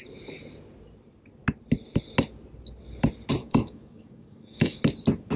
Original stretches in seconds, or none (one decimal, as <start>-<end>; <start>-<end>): 0.0-3.4; 4.8-5.4